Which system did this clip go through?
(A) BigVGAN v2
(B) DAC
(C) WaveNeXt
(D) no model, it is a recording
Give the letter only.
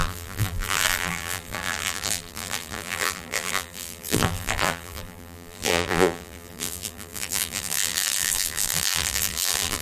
A